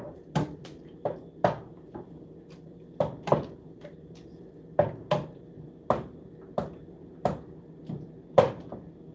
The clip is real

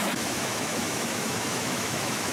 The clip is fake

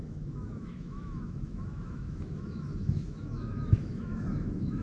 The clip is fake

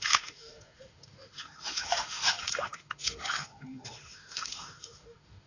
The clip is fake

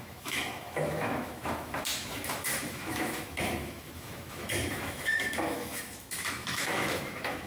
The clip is fake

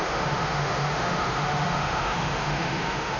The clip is fake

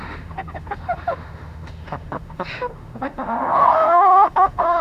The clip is fake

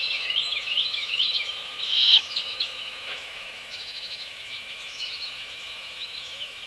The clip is fake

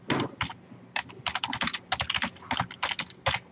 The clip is real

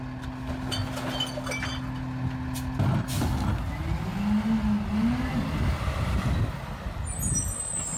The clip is real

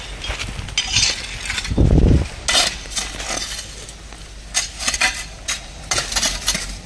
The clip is real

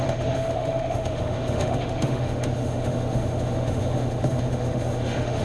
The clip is fake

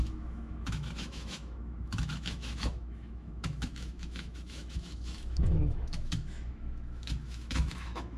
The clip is fake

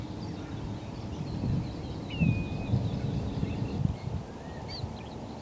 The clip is real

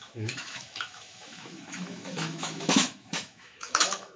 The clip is fake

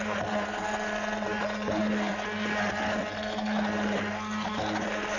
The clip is real